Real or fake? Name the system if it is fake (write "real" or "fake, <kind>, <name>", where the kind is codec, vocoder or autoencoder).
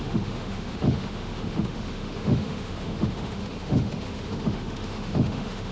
fake, autoencoder, DAC-VAE